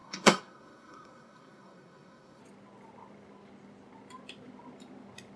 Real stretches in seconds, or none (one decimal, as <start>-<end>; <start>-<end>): 2.4-5.4